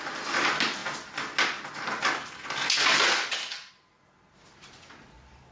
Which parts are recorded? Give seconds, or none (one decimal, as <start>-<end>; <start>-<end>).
0.0-5.5

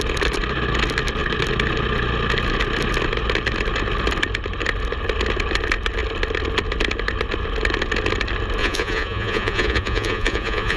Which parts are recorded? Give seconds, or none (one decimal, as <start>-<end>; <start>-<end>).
0.0-8.6